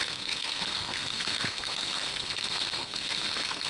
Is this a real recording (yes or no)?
no